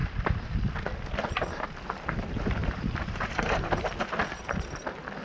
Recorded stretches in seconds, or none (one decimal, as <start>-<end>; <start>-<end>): 0.6-2.6; 4.0-5.2